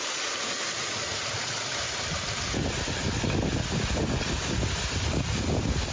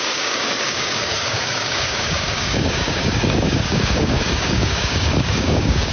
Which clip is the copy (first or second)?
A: second